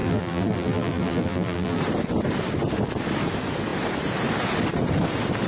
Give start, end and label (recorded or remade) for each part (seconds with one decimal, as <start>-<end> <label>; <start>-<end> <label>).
0.0-1.8 remade; 1.8-5.5 recorded